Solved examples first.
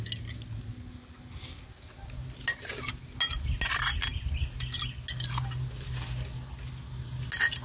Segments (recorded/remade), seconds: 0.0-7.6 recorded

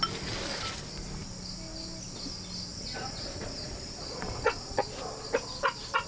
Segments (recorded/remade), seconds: 0.0-2.7 recorded; 2.7-4.8 remade; 4.8-6.1 recorded

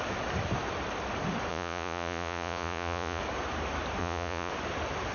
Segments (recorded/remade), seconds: 0.0-1.5 recorded; 1.5-3.2 remade; 3.2-4.0 recorded; 4.0-4.5 remade; 4.5-5.1 recorded

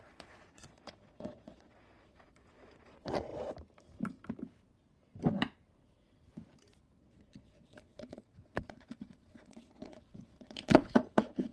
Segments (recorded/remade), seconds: 0.0-3.3 remade; 3.3-7.0 recorded; 7.0-11.5 remade

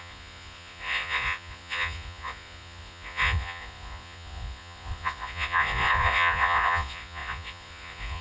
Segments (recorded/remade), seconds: 0.0-8.2 remade

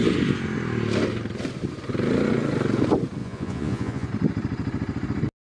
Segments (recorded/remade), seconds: 0.0-3.2 recorded; 3.2-4.1 remade; 4.1-5.6 recorded